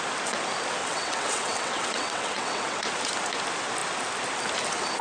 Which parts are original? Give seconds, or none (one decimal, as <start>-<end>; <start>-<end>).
0.0-0.8; 2.9-5.0